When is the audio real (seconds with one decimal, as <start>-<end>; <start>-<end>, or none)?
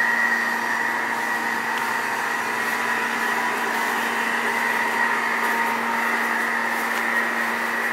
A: 0.0-7.9